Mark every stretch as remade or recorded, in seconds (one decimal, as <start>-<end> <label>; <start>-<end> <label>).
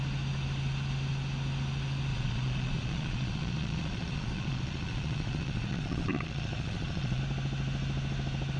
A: 0.0-2.1 recorded; 2.1-7.2 remade; 7.2-8.6 recorded